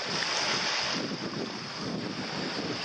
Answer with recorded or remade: remade